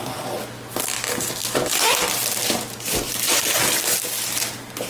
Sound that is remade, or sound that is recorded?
recorded